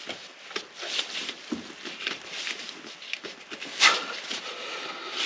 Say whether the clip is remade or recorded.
remade